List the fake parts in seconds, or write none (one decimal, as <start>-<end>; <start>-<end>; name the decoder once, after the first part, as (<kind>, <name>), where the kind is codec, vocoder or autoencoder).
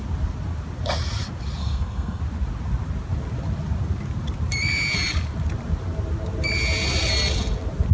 1.6-2.2 (codec, SNAC)